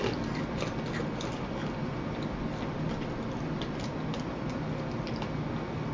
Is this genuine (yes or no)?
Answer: yes